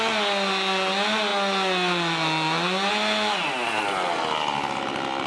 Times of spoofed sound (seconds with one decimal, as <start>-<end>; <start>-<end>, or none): none